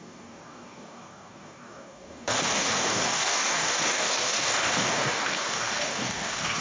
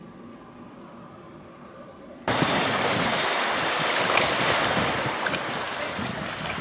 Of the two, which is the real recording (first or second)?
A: second